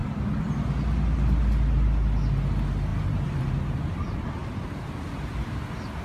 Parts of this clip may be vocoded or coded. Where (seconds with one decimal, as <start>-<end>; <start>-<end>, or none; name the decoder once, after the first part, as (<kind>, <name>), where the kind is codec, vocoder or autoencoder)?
2.9-4.0 (vocoder, BigVGAN v2); 4.4-5.1